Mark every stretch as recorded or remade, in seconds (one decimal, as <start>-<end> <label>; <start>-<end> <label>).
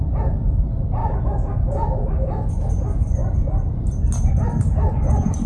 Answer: 0.0-1.0 recorded; 1.0-2.7 remade; 2.7-5.5 recorded